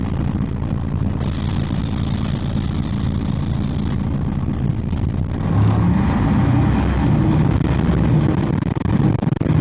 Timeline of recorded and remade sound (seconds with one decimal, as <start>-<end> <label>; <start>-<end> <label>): 0.0-9.6 recorded